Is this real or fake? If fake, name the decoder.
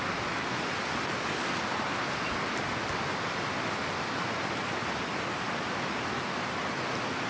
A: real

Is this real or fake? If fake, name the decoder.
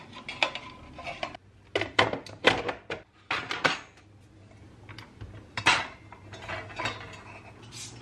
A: real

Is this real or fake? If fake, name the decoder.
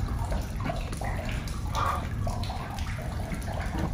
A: fake, vocoder, BigVGAN v2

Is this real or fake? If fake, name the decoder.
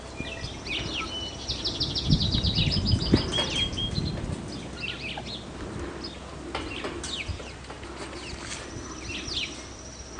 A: real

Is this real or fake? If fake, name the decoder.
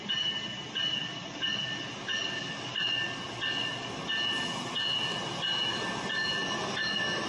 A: real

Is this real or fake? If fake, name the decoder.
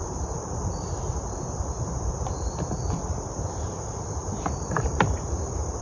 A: fake, vocoder, BigVGAN v2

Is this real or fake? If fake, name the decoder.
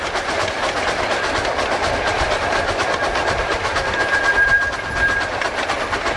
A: fake, vocoder, BigVGAN v2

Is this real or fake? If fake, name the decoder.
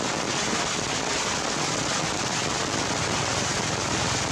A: real